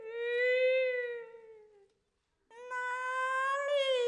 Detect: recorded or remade recorded